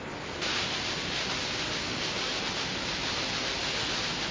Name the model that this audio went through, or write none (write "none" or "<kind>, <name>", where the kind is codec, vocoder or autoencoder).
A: none